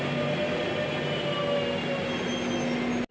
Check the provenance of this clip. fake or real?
real